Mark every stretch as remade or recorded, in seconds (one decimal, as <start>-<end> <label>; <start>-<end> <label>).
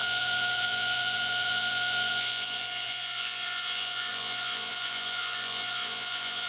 0.0-6.5 remade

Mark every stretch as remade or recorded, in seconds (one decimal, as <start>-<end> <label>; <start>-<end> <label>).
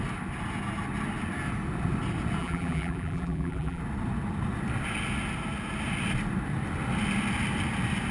0.0-2.4 recorded; 2.4-3.8 remade; 3.8-8.1 recorded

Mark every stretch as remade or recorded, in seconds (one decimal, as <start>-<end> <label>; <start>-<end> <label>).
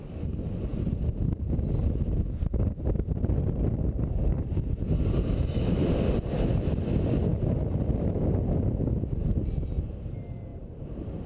0.0-10.5 recorded; 10.5-11.3 remade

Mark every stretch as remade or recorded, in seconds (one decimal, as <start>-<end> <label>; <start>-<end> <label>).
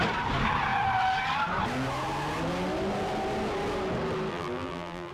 0.0-4.3 recorded; 4.3-5.1 remade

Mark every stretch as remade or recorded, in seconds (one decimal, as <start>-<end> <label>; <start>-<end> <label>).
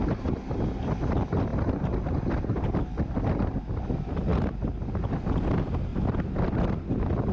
0.0-7.3 recorded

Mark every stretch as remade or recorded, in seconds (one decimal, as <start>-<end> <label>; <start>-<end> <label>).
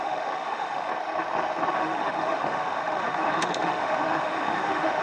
0.0-0.9 remade; 0.9-1.7 recorded; 1.7-5.0 remade